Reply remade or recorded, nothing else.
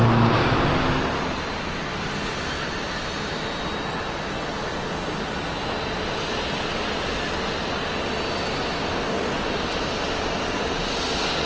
recorded